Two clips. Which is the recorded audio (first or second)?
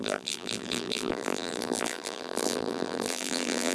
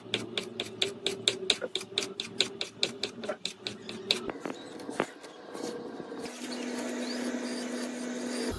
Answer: second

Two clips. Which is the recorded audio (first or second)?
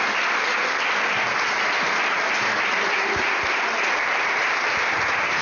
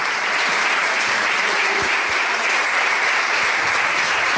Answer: first